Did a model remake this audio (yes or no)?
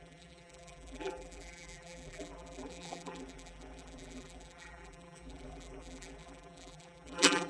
yes